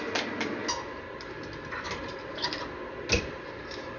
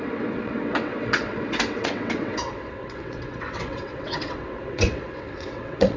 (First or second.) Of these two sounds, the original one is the first